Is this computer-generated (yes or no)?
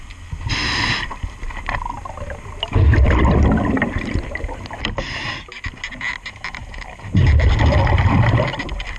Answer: no